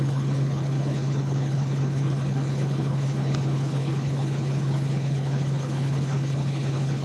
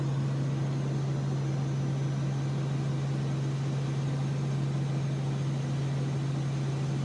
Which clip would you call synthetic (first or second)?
first